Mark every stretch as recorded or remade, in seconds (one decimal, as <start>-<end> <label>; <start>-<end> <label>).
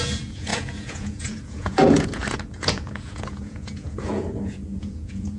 0.0-5.4 remade